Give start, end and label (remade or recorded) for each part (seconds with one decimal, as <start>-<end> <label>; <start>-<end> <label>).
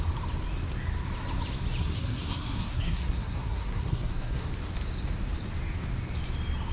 0.0-1.8 recorded; 1.8-4.5 remade; 4.5-6.7 recorded